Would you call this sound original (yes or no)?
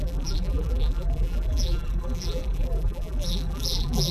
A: no